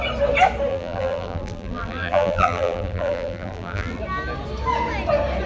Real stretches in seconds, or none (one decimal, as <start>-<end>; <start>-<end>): 0.0-0.7; 4.0-5.5